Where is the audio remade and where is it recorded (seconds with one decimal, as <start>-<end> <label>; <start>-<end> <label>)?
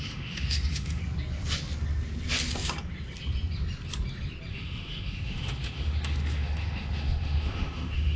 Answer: 0.0-1.0 remade; 1.0-4.5 recorded; 4.5-8.2 remade